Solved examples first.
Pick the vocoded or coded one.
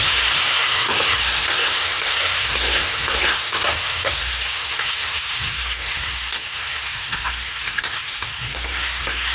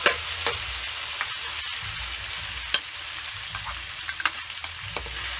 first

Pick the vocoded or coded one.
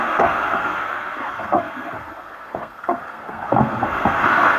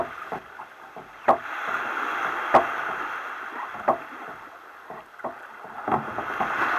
first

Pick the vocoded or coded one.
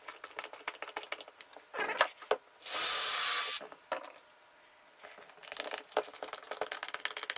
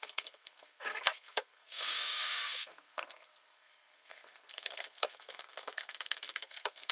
second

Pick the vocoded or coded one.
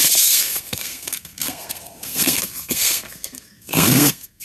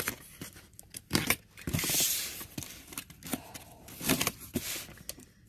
first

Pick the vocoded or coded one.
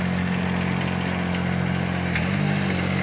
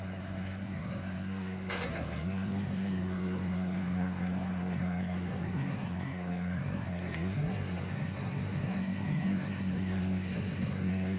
second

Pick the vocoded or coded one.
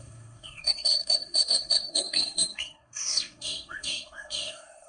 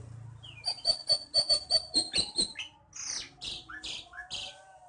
first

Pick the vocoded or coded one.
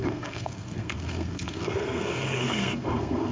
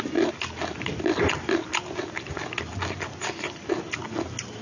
first